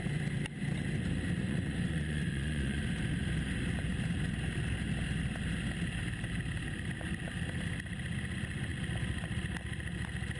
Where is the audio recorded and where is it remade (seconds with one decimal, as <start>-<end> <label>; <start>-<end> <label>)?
0.0-1.4 recorded; 1.4-2.8 remade; 2.8-10.4 recorded